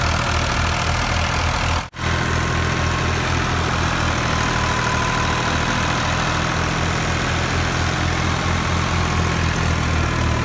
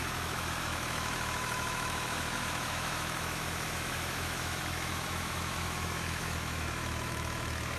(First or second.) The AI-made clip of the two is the second